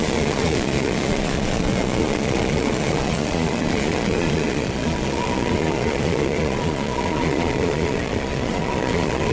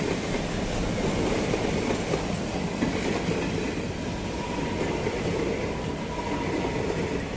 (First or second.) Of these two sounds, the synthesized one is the first